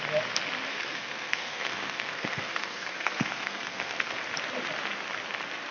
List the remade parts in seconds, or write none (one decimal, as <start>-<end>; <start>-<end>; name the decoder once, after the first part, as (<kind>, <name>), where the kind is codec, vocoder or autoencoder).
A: 0.7-4.1 (codec, SNAC)